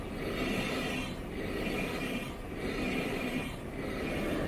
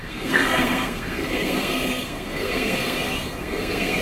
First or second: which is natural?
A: first